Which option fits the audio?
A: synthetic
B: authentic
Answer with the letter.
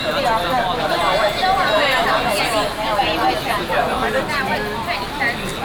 B